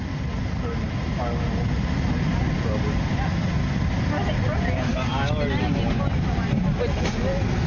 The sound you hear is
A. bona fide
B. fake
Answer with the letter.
A